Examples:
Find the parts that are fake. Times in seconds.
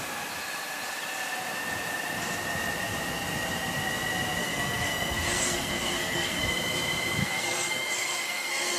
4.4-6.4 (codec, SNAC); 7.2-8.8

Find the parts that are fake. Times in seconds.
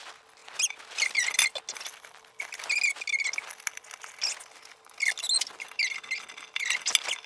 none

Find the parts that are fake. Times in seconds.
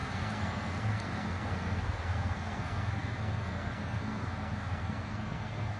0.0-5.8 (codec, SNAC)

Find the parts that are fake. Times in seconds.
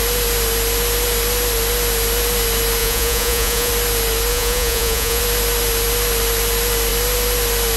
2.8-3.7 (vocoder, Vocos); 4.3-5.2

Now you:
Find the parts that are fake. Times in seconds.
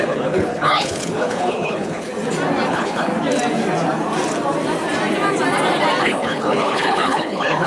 0.0-2.1 (codec, HILCodec); 2.7-3.1; 6.0-7.7